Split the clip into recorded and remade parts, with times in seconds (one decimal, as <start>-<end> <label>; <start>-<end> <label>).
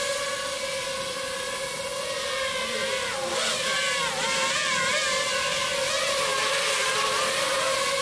0.0-1.9 recorded; 1.9-4.5 remade; 4.5-4.9 recorded; 4.9-5.7 remade; 5.7-8.0 recorded